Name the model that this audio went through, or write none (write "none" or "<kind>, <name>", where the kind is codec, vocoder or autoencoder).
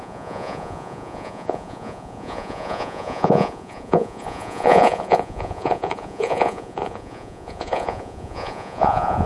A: vocoder, Vocos